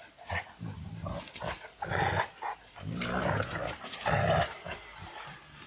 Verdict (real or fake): fake